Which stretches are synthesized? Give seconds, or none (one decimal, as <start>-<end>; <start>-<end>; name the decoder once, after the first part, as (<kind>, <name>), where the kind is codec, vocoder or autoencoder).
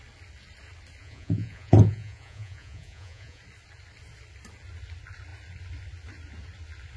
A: 1.0-3.4 (vocoder, Vocos)